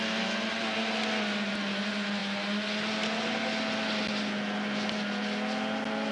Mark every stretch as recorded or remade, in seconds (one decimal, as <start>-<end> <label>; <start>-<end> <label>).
0.0-6.1 recorded